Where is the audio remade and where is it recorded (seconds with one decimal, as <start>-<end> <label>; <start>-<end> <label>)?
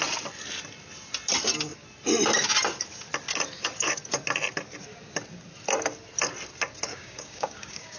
0.0-6.9 recorded; 6.9-8.0 remade